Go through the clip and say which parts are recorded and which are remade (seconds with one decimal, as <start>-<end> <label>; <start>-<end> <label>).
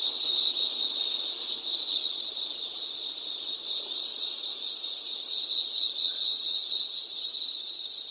0.0-2.0 recorded; 2.0-2.9 remade; 2.9-4.1 recorded; 4.1-4.6 remade; 4.6-5.8 recorded; 5.8-7.3 remade; 7.3-8.1 recorded